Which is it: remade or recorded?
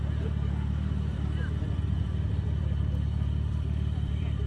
remade